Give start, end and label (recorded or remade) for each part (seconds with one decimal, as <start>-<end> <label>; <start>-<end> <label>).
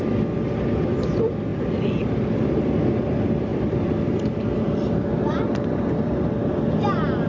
0.0-1.5 recorded; 1.5-2.7 remade; 2.7-3.5 recorded; 3.5-4.7 remade; 4.7-7.3 recorded